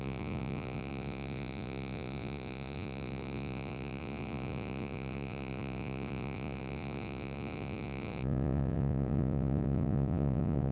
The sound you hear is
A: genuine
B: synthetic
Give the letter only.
B